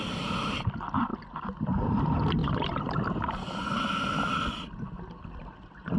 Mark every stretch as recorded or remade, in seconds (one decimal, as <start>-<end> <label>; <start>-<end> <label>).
0.0-6.0 recorded